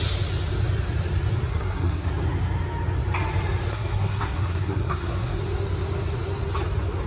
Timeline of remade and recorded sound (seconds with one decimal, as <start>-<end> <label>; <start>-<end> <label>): 0.0-1.5 recorded; 1.5-2.1 remade; 2.1-3.7 recorded; 3.7-5.4 remade; 5.4-7.1 recorded